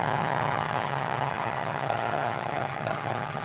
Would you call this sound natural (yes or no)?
no